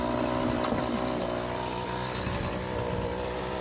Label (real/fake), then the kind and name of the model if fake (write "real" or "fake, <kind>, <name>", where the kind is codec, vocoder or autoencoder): real